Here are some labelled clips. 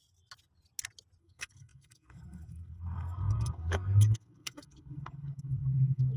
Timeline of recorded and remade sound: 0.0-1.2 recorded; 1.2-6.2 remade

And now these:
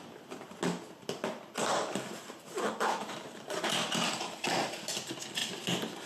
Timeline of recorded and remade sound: 0.0-1.6 recorded; 1.6-4.5 remade; 4.5-6.1 recorded

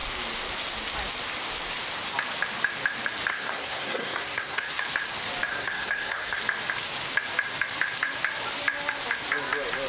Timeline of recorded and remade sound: 0.0-3.3 recorded; 3.3-4.8 remade; 4.8-5.5 recorded; 5.5-6.4 remade; 6.4-9.9 recorded

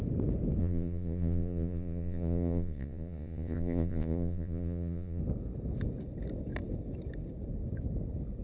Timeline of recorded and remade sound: 0.0-0.6 recorded; 0.6-5.2 remade; 5.2-8.4 recorded

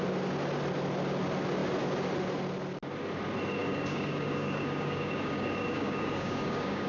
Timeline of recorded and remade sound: 0.0-3.6 recorded; 3.6-6.9 remade

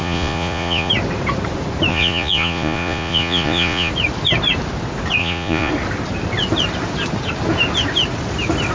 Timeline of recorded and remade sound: 0.0-0.9 remade; 0.9-1.9 recorded; 1.9-3.9 remade; 3.9-5.2 recorded; 5.2-5.7 remade; 5.7-8.7 recorded

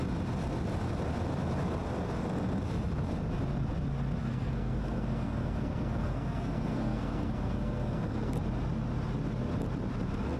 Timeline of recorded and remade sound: 0.0-4.2 recorded; 4.2-8.4 remade; 8.4-10.4 recorded

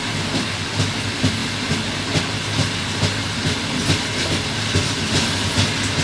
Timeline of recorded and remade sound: 0.0-6.0 recorded